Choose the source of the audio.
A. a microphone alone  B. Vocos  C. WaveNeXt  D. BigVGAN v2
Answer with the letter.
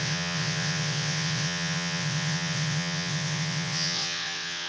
C